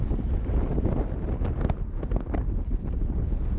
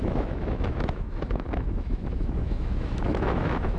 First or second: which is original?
first